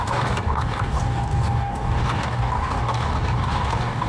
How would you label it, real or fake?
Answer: fake